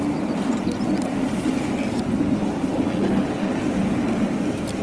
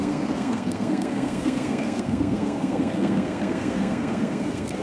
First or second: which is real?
first